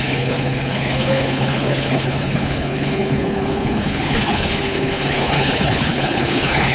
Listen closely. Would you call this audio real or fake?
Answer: fake